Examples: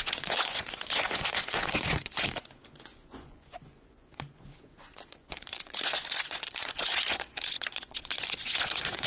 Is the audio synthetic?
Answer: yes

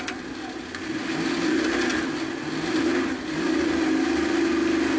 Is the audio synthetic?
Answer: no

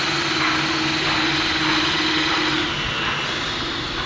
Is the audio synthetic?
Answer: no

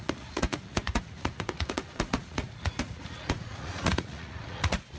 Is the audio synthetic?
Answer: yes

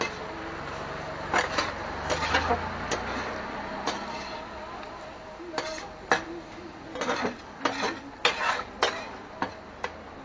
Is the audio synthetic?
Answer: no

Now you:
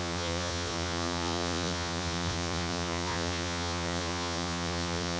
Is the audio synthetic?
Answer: yes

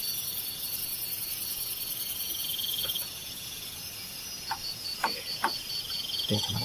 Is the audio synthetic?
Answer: yes